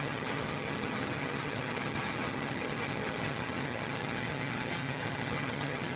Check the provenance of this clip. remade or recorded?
remade